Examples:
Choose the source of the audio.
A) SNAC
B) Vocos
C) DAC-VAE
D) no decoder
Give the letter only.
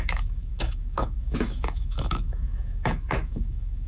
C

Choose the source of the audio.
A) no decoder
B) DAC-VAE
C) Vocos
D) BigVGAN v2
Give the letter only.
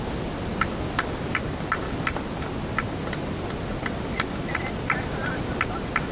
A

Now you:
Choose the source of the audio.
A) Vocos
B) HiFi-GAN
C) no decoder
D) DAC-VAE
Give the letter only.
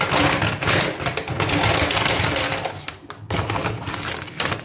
C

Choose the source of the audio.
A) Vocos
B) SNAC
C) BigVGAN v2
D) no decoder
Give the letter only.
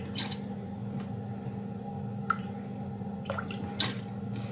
D